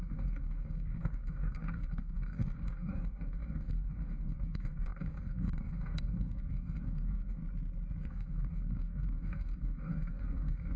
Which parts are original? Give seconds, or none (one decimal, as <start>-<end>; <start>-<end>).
7.4-8.0

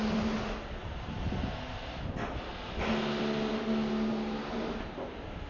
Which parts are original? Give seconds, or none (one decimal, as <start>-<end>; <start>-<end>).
0.0-5.5

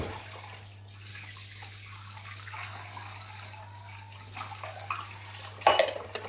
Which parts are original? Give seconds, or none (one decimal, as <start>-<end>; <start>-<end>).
0.0-1.1; 4.9-6.3

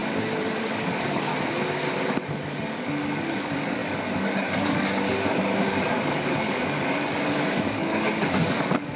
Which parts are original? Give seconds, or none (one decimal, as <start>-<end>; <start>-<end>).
0.0-0.6; 1.3-2.0